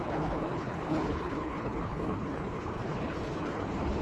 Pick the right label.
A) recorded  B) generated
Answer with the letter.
B